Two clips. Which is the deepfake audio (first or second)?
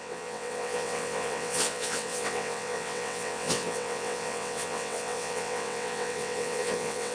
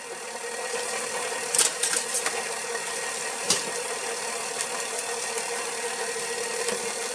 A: first